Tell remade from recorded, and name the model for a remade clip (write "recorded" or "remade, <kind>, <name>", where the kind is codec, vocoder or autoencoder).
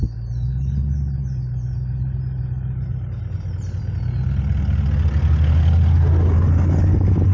recorded